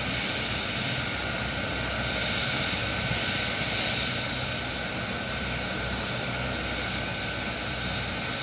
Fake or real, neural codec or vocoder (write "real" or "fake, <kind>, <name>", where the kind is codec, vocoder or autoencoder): real